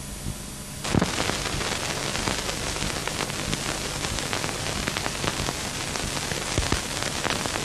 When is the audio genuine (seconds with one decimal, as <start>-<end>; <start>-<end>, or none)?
0.0-7.6